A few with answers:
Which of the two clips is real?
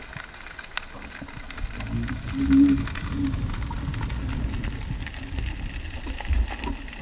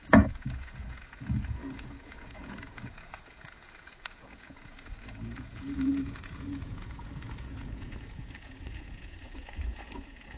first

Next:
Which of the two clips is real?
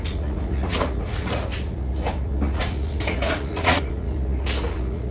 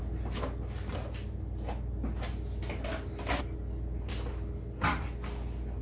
second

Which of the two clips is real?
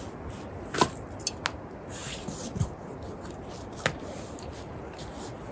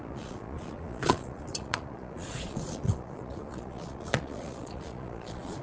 first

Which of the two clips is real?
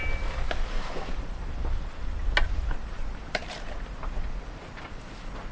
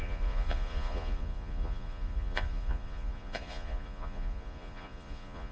first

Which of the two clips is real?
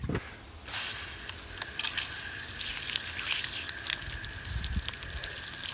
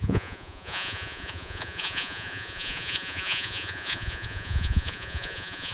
first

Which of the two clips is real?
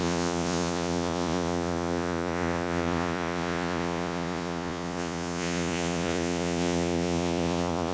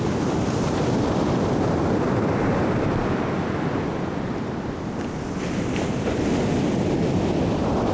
second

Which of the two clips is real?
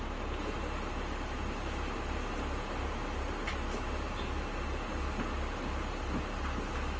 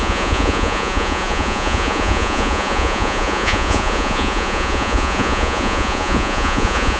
first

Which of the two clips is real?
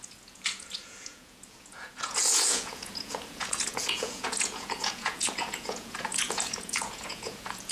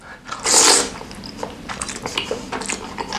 second